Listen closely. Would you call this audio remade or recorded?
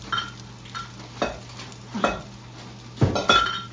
recorded